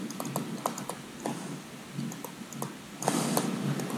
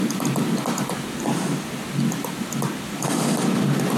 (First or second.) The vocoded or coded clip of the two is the second